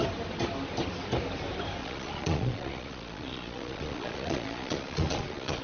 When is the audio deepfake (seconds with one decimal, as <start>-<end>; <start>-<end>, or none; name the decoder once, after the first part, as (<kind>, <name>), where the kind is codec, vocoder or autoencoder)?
1.8-5.6 (vocoder, Vocos)